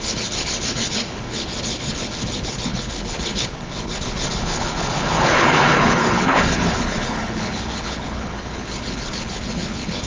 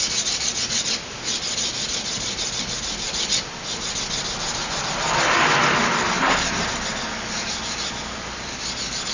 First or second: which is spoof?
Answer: first